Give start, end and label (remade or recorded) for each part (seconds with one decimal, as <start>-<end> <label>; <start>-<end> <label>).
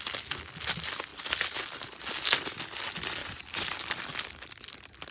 0.0-3.2 recorded; 3.2-4.0 remade; 4.0-5.1 recorded